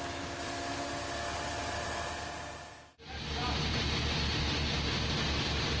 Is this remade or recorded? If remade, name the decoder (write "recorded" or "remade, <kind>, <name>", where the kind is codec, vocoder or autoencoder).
recorded